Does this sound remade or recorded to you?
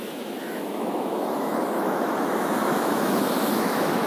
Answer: remade